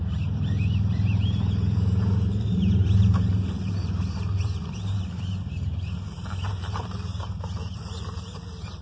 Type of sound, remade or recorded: remade